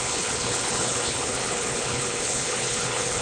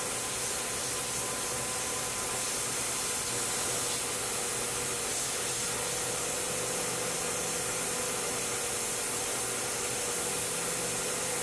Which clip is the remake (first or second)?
first